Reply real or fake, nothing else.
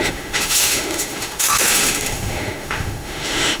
fake